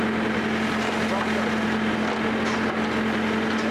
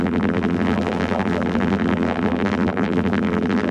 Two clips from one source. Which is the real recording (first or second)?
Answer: first